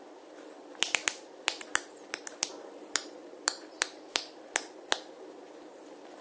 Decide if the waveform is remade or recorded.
recorded